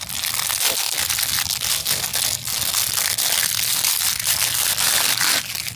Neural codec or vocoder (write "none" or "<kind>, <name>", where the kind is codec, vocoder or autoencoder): none